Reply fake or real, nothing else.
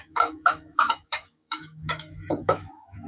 fake